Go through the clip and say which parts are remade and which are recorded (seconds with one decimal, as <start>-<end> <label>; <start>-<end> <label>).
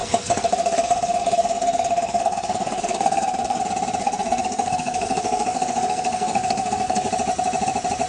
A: 0.0-3.6 remade; 3.6-4.0 recorded; 4.0-7.1 remade; 7.1-8.1 recorded